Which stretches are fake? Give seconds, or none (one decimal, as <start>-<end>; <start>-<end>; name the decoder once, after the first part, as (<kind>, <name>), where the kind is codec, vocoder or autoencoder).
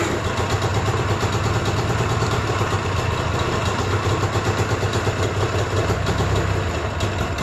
none